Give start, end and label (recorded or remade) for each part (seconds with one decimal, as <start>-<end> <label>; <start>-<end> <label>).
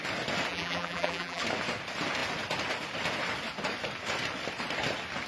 0.0-0.5 recorded; 0.5-1.4 remade; 1.4-5.3 recorded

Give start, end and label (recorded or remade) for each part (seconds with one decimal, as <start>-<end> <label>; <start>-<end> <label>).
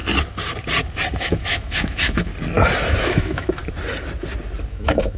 0.0-1.2 recorded; 1.2-2.3 remade; 2.3-3.1 recorded; 3.1-3.6 remade; 3.6-4.7 recorded; 4.7-5.2 remade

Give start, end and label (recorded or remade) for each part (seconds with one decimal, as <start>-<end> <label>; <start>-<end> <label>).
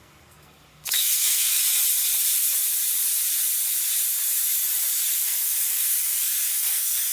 0.0-1.6 remade; 1.6-5.1 recorded; 5.1-7.1 remade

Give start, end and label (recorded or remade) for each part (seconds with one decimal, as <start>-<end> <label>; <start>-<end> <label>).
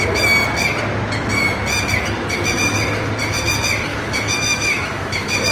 0.0-3.9 recorded; 3.9-5.5 remade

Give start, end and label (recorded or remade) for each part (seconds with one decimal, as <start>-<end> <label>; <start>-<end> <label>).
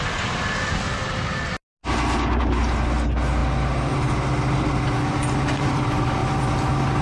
0.0-7.0 recorded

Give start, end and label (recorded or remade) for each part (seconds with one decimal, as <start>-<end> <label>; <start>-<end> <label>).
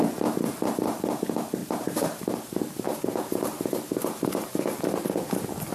0.0-1.6 recorded; 1.6-5.0 remade; 5.0-5.7 recorded